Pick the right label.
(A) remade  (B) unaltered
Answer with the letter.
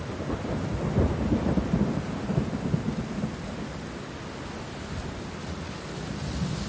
B